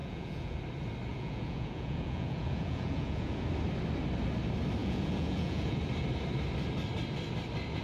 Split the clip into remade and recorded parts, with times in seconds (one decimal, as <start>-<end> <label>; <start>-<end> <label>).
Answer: 0.0-0.6 remade; 0.6-1.1 recorded; 1.1-3.4 remade; 3.4-4.8 recorded; 4.8-5.8 remade; 5.8-7.8 recorded